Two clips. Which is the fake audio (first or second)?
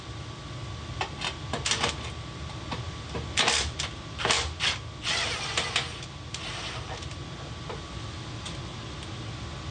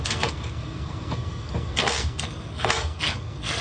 second